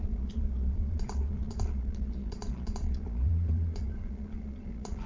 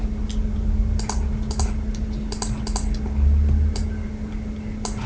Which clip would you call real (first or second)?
second